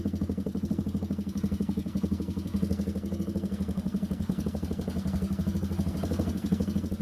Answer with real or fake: fake